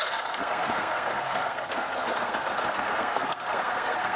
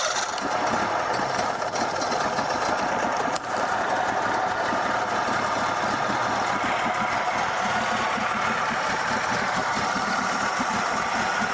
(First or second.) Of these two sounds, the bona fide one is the second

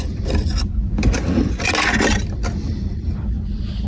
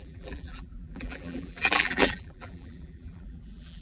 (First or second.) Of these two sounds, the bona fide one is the first